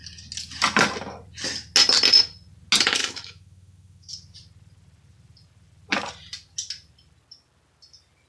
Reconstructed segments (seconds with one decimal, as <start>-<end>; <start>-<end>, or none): 3.0-4.1